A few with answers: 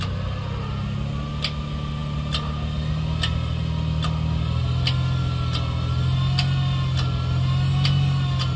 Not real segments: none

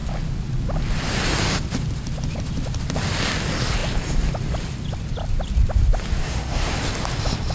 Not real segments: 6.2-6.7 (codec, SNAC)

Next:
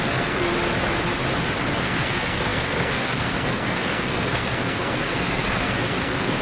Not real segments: 0.0-0.5 (codec, SNAC); 1.7-6.4

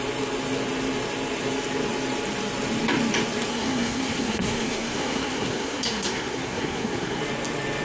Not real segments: 3.5-7.2 (codec, SNAC)

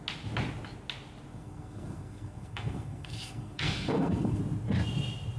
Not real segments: 1.3-4.4 (codec, SNAC)